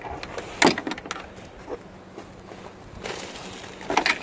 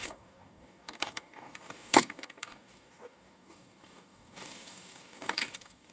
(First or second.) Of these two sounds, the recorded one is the first